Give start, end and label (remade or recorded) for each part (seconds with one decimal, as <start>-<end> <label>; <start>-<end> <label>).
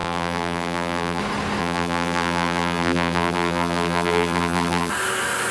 0.0-1.2 remade; 1.2-1.6 recorded; 1.6-4.9 remade; 4.9-5.5 recorded